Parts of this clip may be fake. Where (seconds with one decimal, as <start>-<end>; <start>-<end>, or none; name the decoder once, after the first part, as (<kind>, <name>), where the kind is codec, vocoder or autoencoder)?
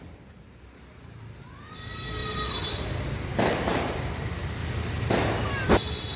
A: 2.2-4.0 (vocoder, BigVGAN v2); 4.6-5.1